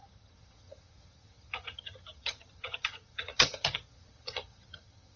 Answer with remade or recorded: remade